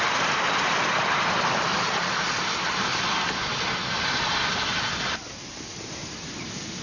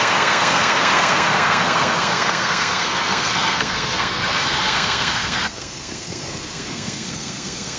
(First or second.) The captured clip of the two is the first